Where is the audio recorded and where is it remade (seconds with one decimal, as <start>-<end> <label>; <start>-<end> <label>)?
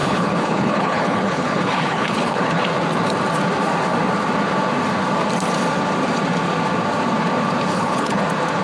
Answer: 0.0-2.6 remade; 2.6-7.7 recorded; 7.7-8.2 remade; 8.2-8.6 recorded